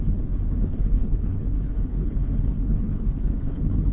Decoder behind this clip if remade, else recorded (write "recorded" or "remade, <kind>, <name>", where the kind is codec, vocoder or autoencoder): remade, codec, HILCodec